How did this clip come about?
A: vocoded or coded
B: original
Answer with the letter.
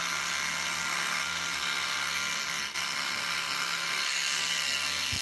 A